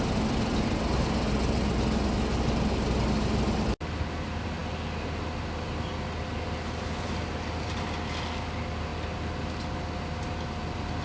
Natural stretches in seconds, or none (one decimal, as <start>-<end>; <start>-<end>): 0.0-11.0